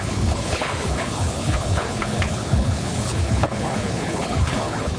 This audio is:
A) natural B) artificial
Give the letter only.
B